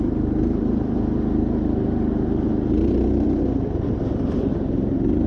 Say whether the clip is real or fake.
fake